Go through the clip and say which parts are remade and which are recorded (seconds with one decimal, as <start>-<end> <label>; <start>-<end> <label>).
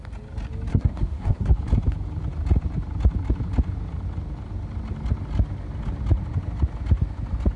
0.0-0.7 recorded; 0.7-1.6 remade; 1.6-7.6 recorded